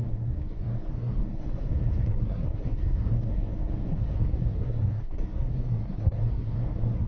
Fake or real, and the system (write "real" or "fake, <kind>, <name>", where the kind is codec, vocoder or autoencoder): fake, codec, SNAC